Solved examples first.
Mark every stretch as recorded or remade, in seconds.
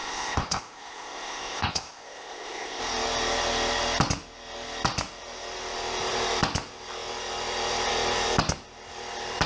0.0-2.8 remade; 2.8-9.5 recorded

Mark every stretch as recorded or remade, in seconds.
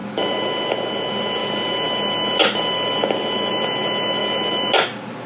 0.0-5.3 recorded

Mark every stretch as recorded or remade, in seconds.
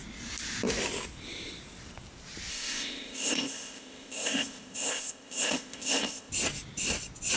0.0-2.5 recorded; 2.5-6.3 remade; 6.3-7.4 recorded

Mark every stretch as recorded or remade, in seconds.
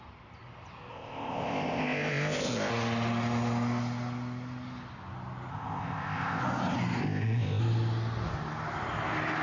0.0-0.9 recorded; 0.9-2.7 remade; 2.7-5.5 recorded; 5.5-6.4 remade; 6.4-7.0 recorded; 7.0-7.6 remade; 7.6-9.4 recorded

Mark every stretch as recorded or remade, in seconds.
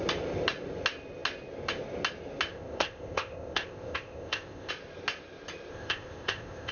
0.0-2.5 recorded; 2.5-4.7 remade; 4.7-5.7 recorded; 5.7-6.7 remade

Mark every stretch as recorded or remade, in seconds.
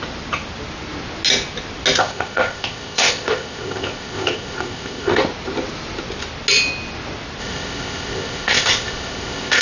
0.0-2.0 recorded; 2.0-5.2 remade; 5.2-7.4 recorded; 7.4-9.6 remade